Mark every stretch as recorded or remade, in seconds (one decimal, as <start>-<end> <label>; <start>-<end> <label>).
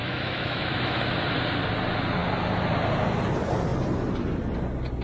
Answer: 0.0-1.0 remade; 1.0-5.0 recorded